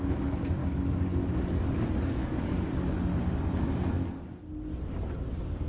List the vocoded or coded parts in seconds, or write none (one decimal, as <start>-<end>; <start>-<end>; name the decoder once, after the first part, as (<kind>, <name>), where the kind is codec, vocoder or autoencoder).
0.0-0.6 (codec, DAC); 1.5-3.1; 5.3-5.7